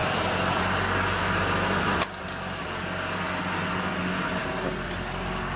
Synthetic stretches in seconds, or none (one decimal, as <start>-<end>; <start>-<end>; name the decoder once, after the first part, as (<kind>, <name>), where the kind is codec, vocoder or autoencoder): none